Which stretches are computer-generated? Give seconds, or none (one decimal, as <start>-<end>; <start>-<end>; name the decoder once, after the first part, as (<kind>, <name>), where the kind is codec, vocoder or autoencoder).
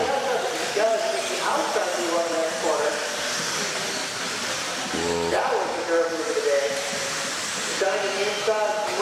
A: 0.0-2.9 (vocoder, BigVGAN v2)